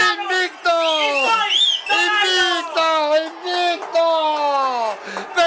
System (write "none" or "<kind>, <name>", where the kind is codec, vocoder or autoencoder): none